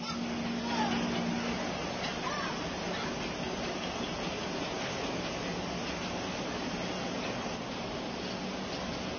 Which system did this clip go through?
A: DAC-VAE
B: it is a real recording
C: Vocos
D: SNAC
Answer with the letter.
B